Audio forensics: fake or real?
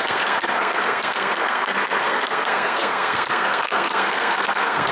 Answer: fake